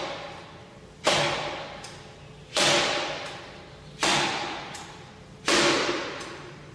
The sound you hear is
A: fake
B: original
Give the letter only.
B